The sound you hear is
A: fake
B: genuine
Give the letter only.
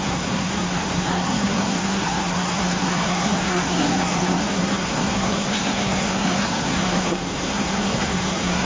A